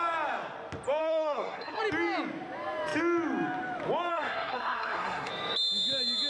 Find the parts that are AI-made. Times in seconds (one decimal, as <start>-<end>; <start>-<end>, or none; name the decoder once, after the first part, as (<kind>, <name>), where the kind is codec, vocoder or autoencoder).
1.0-1.8 (codec, SNAC); 4.1-5.3